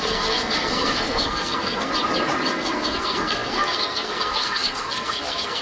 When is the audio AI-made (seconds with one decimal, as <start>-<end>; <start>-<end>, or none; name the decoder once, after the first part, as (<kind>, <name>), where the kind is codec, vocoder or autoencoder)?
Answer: 0.0-1.9 (codec, SNAC); 2.5-5.6